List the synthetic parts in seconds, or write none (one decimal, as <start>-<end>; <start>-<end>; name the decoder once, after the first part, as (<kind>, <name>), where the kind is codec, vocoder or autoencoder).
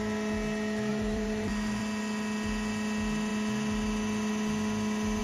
0.9-1.8 (vocoder, BigVGAN v2)